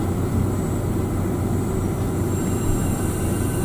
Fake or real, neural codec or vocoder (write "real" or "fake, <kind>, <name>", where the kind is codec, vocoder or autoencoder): real